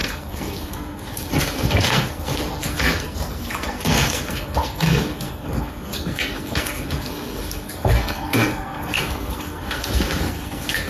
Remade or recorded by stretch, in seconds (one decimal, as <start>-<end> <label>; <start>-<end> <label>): 0.0-10.9 remade